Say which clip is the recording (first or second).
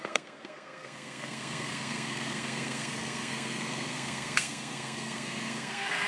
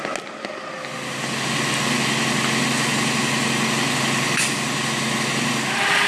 second